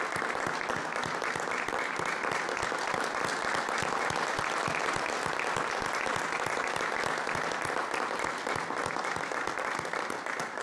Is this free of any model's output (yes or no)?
yes